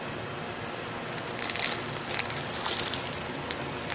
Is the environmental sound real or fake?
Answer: real